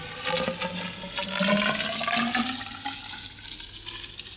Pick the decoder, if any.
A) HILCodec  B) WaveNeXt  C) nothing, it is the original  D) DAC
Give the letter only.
C